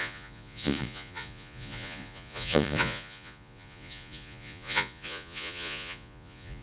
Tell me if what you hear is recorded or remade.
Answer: remade